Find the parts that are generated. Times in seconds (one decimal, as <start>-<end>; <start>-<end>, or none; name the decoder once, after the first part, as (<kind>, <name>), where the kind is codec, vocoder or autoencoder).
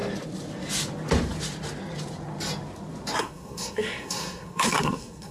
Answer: 3.2-5.3 (codec, SNAC)